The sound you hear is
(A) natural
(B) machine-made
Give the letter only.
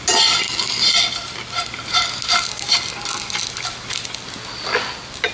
A